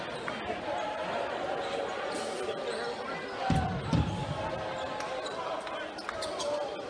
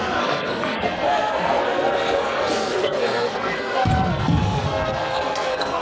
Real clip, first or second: first